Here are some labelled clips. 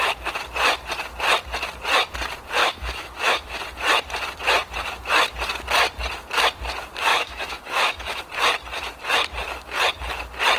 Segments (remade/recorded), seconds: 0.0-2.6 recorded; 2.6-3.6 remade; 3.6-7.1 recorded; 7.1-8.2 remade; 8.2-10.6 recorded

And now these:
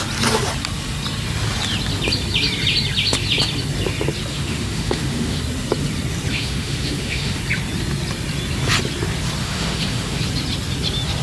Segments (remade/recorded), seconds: 0.0-4.3 recorded; 4.3-5.4 remade; 5.4-6.3 recorded; 6.3-7.4 remade; 7.4-9.4 recorded; 9.4-10.2 remade; 10.2-11.2 recorded

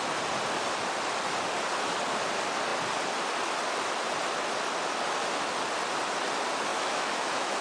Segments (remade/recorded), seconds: 0.0-6.7 recorded; 6.7-7.6 remade

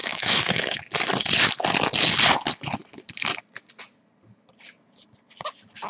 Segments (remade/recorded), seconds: 0.0-0.8 remade; 0.8-5.9 recorded

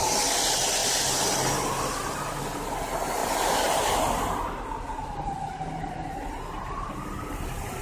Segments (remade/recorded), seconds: 0.0-7.8 recorded

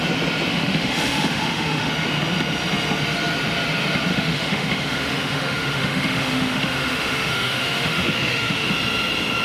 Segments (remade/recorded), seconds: 0.0-0.5 recorded; 0.5-1.9 remade; 1.9-4.1 recorded; 4.1-8.7 remade; 8.7-9.4 recorded